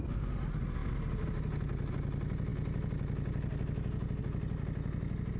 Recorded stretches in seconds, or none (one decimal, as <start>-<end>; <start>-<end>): 0.0-5.4